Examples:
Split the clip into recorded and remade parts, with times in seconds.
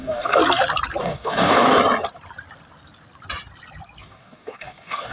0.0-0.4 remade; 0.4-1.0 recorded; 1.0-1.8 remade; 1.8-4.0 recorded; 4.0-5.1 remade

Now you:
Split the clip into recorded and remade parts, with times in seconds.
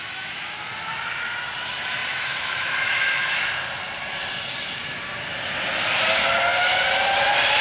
0.0-0.6 remade; 0.6-2.0 recorded; 2.0-3.4 remade; 3.4-7.6 recorded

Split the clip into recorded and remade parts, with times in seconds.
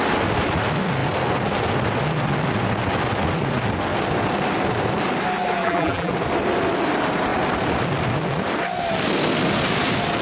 0.0-5.6 recorded; 5.6-6.1 remade; 6.1-10.2 recorded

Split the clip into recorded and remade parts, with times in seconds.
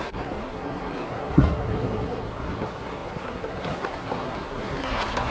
0.0-5.3 remade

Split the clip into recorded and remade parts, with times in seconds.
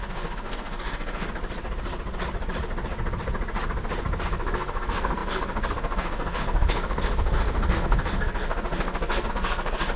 0.0-1.4 remade; 1.4-4.2 recorded; 4.2-10.0 remade